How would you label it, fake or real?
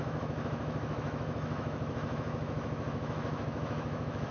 fake